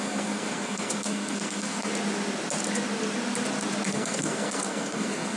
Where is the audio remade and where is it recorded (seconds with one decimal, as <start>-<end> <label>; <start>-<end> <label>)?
0.0-1.9 remade; 1.9-3.9 recorded; 3.9-5.4 remade